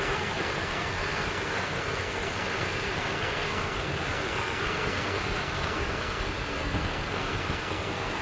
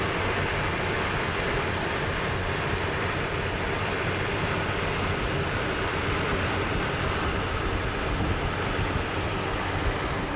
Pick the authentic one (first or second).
second